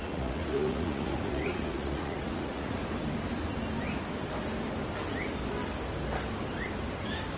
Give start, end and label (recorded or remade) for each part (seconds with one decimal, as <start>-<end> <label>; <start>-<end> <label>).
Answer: 0.0-2.8 remade; 2.8-7.4 recorded